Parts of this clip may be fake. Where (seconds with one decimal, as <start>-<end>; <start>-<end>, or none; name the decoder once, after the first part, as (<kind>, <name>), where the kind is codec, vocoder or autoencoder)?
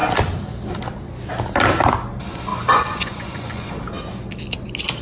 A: 2.5-3.7 (vocoder, Vocos)